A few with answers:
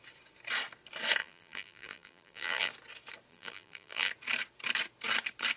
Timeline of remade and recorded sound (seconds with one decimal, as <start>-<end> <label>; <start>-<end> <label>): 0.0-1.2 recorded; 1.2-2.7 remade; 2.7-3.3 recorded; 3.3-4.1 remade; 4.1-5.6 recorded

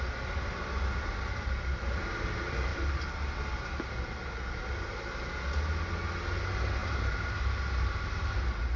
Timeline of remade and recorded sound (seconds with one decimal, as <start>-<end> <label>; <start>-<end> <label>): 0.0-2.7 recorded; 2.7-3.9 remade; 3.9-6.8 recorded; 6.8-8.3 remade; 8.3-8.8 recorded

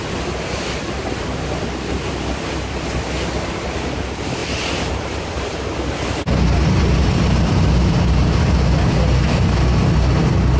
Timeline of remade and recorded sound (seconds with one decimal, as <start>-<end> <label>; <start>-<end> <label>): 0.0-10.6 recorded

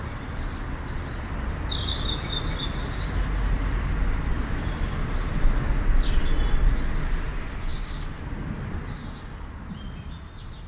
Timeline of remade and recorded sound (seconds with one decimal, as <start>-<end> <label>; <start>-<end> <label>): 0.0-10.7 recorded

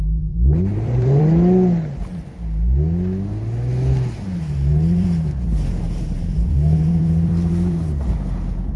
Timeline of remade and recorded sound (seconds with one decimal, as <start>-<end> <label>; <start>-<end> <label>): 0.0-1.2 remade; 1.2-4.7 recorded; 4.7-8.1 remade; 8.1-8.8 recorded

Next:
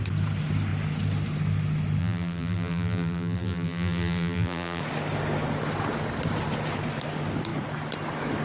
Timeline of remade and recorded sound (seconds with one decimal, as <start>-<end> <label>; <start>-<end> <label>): 0.0-2.0 recorded; 2.0-4.8 remade; 4.8-8.4 recorded

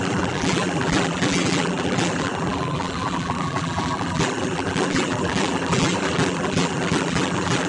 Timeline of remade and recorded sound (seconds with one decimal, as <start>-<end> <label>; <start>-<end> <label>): 0.0-7.7 remade